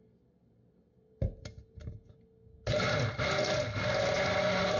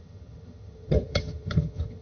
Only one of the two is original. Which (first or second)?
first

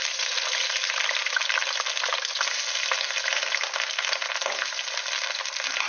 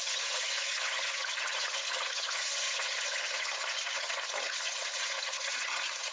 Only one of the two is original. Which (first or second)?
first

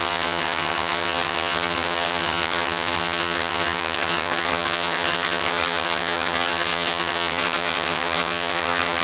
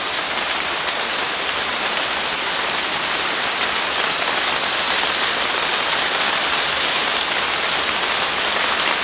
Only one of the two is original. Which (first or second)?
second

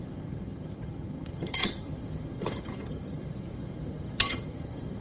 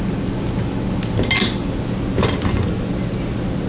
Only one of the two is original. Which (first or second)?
second